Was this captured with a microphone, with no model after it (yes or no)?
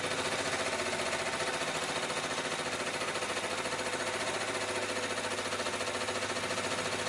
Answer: yes